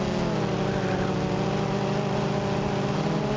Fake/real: real